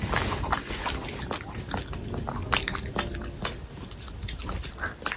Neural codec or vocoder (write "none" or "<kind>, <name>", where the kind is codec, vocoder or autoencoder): none